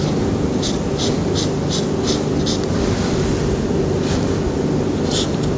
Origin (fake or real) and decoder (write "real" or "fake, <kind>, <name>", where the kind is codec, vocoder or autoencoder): real